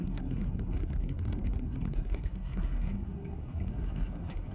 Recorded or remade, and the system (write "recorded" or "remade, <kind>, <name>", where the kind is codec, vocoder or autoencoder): remade, codec, SNAC